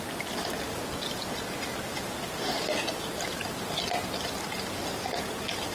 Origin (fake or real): real